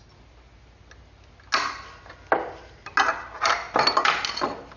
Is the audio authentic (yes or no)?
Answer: yes